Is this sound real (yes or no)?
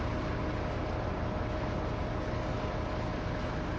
yes